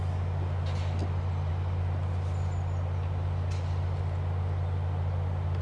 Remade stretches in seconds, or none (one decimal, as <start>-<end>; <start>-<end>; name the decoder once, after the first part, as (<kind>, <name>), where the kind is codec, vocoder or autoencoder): none